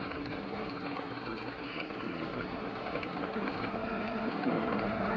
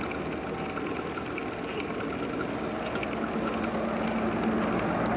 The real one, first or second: second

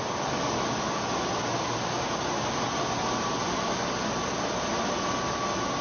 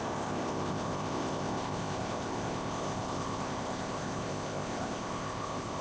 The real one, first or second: first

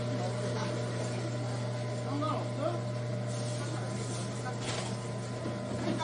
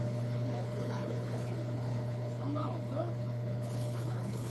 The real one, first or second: first